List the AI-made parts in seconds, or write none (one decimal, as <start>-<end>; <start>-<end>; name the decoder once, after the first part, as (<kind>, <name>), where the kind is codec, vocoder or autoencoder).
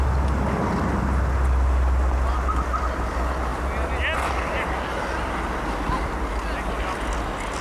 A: none